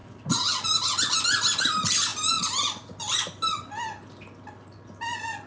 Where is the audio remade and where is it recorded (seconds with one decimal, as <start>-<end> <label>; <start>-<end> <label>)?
0.0-5.5 recorded